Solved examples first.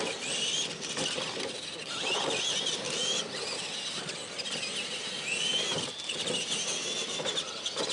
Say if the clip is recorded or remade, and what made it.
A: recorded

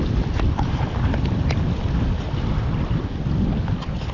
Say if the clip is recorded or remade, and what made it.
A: recorded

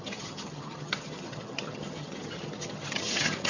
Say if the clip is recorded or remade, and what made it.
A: remade, vocoder, HiFi-GAN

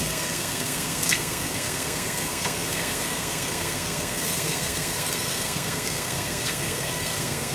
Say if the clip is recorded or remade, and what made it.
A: remade, codec, SNAC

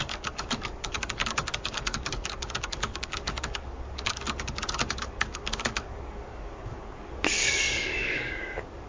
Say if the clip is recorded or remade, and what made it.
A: remade, codec, DAC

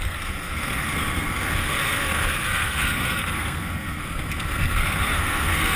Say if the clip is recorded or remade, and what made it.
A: remade, codec, SNAC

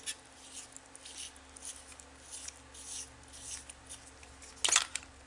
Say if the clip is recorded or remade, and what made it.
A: recorded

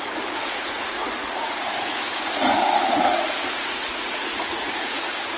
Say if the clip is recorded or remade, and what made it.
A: remade, vocoder, Vocos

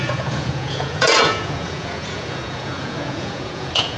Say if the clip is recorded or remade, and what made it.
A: remade, vocoder, Vocos